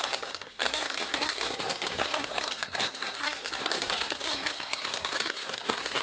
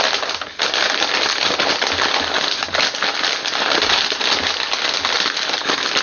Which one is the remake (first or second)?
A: first